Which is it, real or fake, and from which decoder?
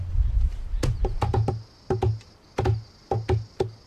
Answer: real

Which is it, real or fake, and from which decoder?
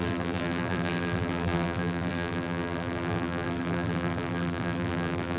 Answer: fake, vocoder, BigVGAN v2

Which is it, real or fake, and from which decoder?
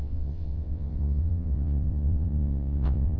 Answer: fake, vocoder, WaveNeXt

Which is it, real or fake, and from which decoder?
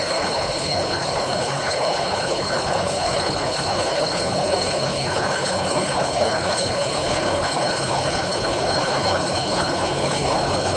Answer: fake, codec, HILCodec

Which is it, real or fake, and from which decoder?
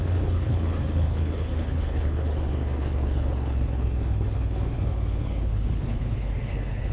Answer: fake, codec, HILCodec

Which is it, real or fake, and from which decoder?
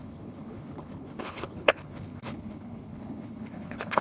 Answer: fake, codec, HILCodec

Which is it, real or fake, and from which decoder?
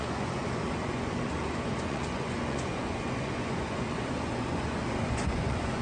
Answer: fake, vocoder, Vocos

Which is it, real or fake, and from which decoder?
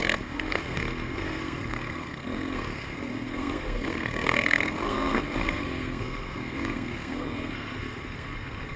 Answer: fake, codec, SNAC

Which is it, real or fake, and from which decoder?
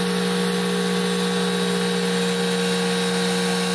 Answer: real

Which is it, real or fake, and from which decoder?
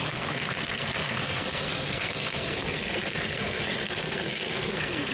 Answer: fake, codec, SNAC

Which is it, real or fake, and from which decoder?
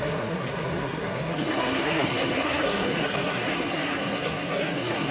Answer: fake, codec, SNAC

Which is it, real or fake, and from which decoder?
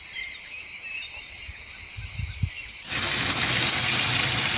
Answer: real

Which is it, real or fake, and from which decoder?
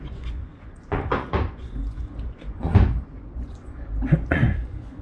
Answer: fake, vocoder, Vocos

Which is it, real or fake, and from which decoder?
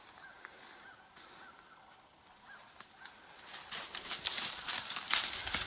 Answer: real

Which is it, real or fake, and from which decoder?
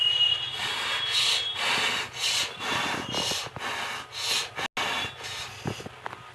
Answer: real